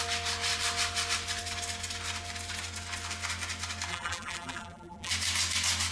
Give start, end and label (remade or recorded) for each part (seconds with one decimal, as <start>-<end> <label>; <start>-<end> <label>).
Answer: 0.0-3.9 recorded; 3.9-5.1 remade; 5.1-5.9 recorded